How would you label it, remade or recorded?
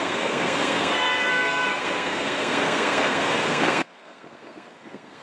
remade